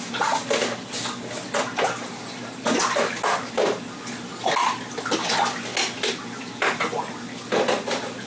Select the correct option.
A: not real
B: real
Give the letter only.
B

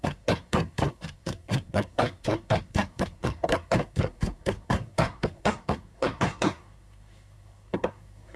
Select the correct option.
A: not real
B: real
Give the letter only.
A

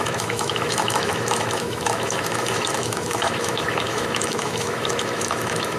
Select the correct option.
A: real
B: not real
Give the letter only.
B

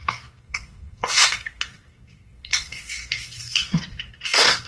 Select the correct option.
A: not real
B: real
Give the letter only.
A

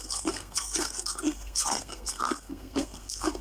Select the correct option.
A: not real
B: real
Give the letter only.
A